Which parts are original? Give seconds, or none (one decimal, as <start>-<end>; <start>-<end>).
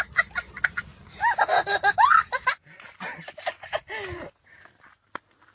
0.0-4.1; 4.6-5.5